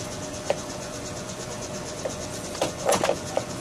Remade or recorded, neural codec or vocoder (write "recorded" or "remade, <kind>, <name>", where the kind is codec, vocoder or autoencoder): remade, vocoder, Vocos